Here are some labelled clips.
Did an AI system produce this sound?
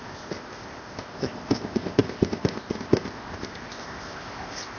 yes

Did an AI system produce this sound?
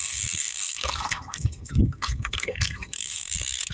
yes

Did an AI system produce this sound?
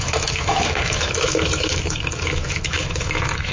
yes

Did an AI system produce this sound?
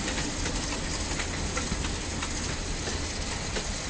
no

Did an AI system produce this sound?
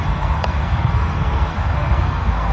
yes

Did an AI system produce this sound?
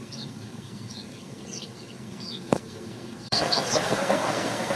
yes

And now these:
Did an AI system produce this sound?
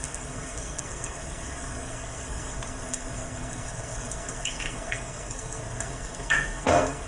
yes